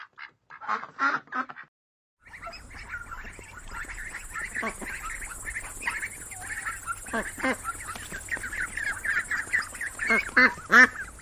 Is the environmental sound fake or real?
real